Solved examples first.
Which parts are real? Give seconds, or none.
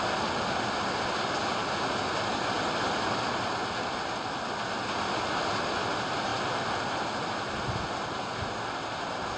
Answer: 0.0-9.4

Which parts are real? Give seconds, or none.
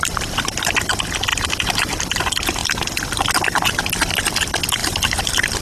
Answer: 0.0-1.3; 1.9-4.8